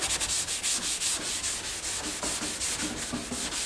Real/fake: real